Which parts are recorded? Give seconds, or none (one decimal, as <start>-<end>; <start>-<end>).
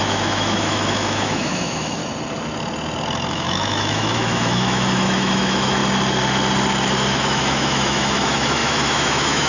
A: 2.0-3.3; 5.8-7.1